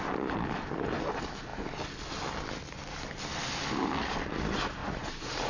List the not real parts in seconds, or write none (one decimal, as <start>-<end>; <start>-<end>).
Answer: 4.8-5.5